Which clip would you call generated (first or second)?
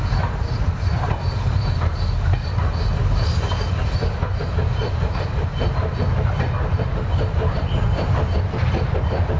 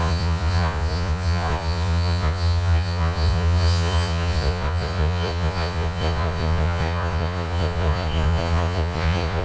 second